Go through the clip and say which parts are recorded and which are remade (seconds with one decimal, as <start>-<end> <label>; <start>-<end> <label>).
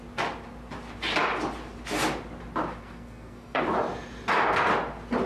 0.0-2.8 recorded; 2.8-3.6 remade; 3.6-5.3 recorded